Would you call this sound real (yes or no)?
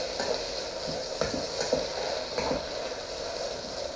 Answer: yes